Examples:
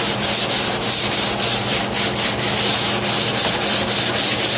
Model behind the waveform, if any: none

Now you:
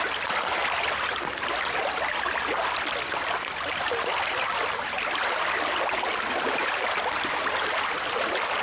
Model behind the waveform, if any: none